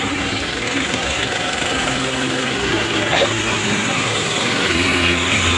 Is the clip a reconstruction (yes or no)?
yes